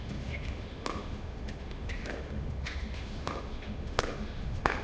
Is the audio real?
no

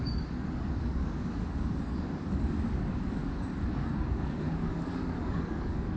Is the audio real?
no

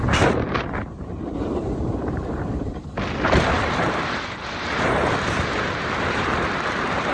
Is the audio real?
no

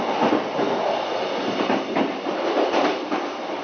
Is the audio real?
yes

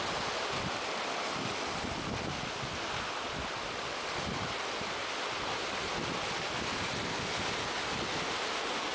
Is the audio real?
yes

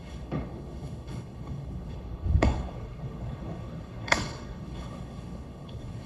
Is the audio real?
no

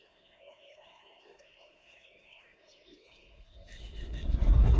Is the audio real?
no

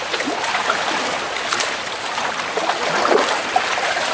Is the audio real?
yes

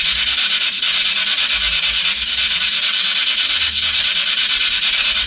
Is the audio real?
yes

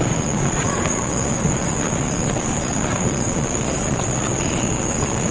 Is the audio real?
no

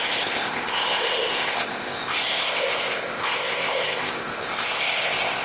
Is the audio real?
no